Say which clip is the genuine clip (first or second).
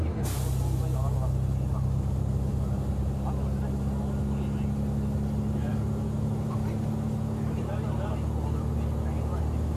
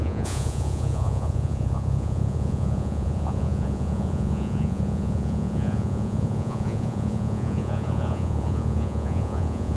first